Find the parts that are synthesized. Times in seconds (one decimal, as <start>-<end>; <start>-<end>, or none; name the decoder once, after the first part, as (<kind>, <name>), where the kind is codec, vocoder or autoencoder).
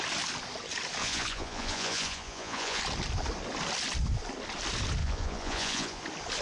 1.0-2.8 (vocoder, Vocos); 5.0-6.0